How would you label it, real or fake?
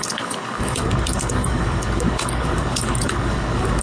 fake